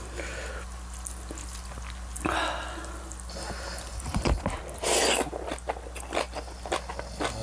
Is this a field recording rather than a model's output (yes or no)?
yes